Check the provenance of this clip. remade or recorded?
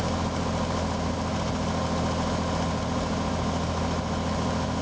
recorded